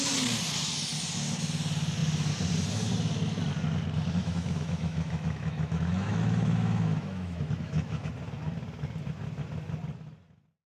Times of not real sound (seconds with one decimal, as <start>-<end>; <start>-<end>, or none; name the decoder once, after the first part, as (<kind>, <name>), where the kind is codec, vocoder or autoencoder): 4.2-8.1 (autoencoder, DAC-VAE)